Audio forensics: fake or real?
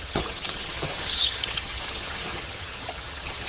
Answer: fake